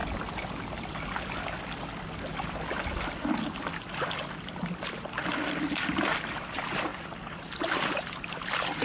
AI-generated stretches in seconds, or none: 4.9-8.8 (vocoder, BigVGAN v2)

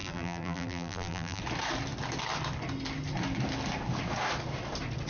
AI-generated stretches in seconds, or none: 0.0-1.4 (vocoder, BigVGAN v2)

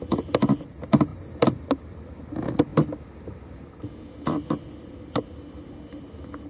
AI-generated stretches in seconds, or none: none

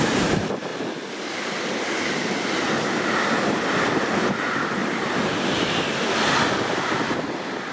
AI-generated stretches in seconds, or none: 4.8-5.8 (vocoder, BigVGAN v2)

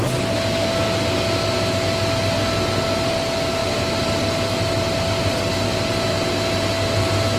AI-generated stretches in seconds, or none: none

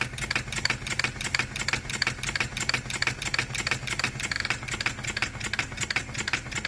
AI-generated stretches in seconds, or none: none

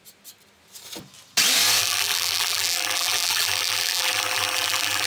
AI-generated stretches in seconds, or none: 1.8-5.1 (vocoder, BigVGAN v2)

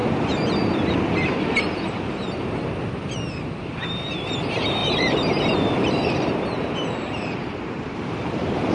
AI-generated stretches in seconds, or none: 4.8-8.7 (vocoder, BigVGAN v2)